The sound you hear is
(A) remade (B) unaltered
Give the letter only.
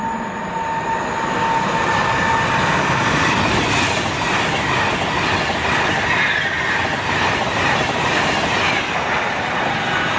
B